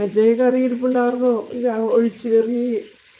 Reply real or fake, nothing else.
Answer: fake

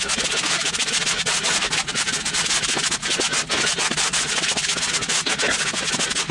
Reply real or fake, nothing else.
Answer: real